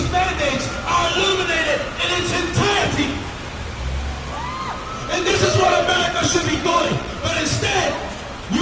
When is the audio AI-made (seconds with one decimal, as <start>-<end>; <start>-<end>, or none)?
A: 5.1-7.1